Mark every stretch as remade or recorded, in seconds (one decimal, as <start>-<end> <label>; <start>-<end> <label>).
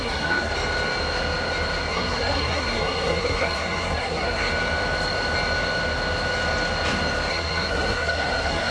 0.0-0.5 remade; 0.5-1.9 recorded; 1.9-4.5 remade; 4.5-7.3 recorded; 7.3-8.7 remade